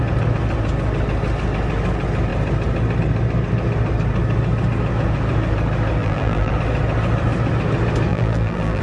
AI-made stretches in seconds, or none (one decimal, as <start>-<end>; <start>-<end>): 6.0-6.5; 8.1-8.8